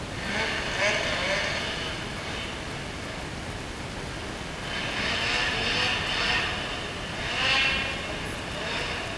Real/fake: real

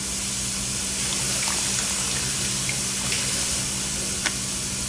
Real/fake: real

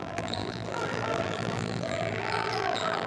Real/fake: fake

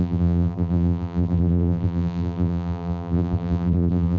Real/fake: fake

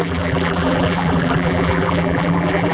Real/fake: fake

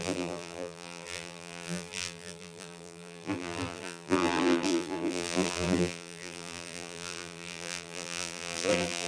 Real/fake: fake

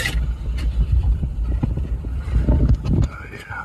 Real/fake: fake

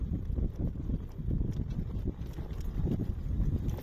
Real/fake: real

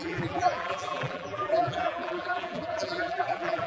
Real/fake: fake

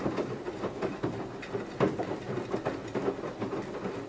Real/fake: real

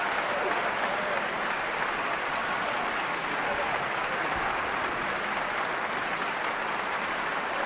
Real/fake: real